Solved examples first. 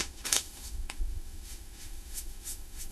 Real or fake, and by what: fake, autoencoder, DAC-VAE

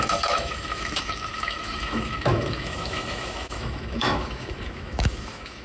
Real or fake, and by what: fake, autoencoder, DAC-VAE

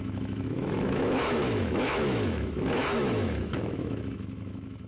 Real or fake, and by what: fake, autoencoder, DAC-VAE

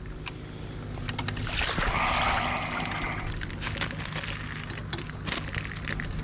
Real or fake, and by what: real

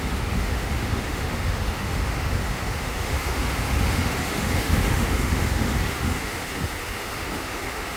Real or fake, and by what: fake, autoencoder, DAC-VAE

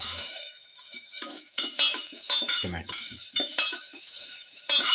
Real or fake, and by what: fake, autoencoder, DAC-VAE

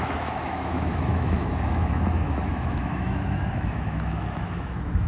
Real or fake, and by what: fake, autoencoder, DAC-VAE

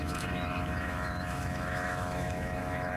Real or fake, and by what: fake, autoencoder, DAC-VAE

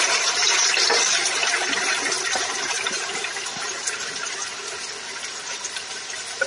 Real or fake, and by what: real